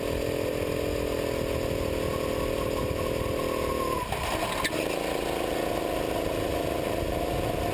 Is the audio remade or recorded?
recorded